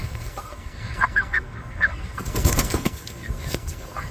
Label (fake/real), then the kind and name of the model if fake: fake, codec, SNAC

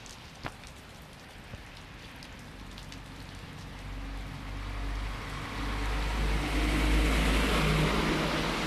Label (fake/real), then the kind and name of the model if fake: real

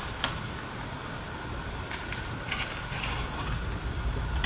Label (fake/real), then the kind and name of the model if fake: real